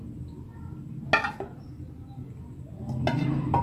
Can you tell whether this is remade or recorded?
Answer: recorded